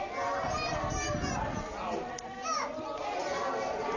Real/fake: real